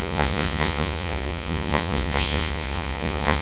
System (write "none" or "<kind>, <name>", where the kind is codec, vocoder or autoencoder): vocoder, Vocos